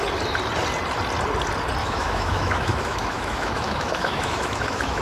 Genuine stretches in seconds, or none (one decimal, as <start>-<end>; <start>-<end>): 0.0-1.8